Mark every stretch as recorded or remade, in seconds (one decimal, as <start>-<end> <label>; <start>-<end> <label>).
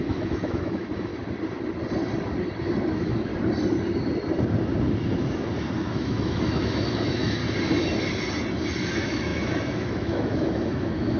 0.0-1.1 remade; 1.1-2.9 recorded; 2.9-3.3 remade; 3.3-5.8 recorded; 5.8-7.4 remade; 7.4-8.9 recorded; 8.9-11.2 remade